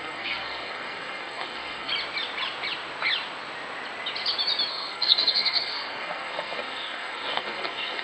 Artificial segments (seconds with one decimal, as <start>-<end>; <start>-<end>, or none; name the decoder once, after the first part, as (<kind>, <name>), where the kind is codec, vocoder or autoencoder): 0.0-1.9 (codec, SNAC); 4.7-8.0